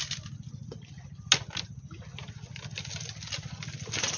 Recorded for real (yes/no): yes